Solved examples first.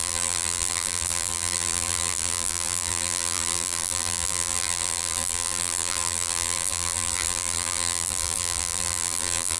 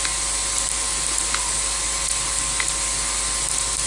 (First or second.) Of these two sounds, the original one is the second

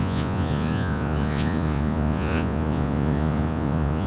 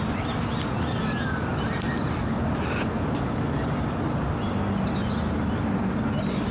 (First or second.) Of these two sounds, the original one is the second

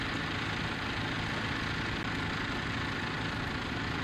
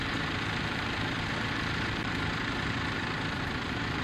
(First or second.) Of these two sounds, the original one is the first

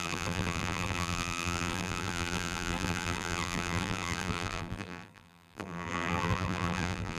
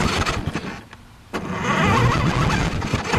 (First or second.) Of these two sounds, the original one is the second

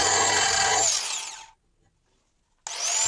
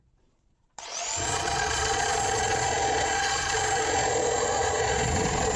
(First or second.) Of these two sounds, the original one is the first